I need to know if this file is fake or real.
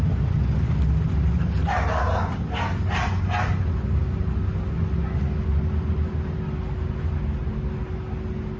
real